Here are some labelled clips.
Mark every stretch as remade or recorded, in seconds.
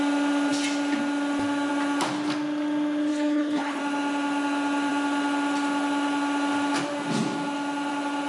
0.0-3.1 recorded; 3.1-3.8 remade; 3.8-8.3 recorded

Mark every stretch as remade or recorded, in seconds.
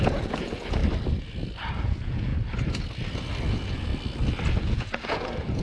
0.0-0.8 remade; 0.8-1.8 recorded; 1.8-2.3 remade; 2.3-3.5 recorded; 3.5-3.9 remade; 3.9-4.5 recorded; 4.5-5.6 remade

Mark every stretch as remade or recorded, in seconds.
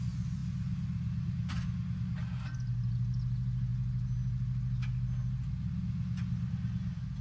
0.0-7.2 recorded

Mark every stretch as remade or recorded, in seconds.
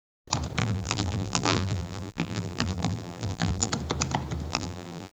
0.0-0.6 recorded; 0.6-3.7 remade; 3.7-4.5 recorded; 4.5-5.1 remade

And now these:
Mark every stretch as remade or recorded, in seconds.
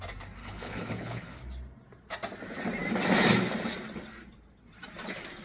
0.0-0.4 recorded; 0.4-1.4 remade; 1.4-5.4 recorded